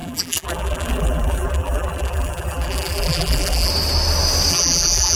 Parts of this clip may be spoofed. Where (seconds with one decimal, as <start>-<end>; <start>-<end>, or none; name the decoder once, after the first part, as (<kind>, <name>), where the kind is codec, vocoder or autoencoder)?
0.0-3.7 (vocoder, BigVGAN v2); 4.5-5.2